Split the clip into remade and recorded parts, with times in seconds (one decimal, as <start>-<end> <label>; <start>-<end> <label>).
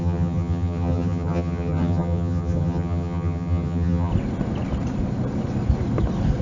0.0-4.1 remade; 4.1-6.4 recorded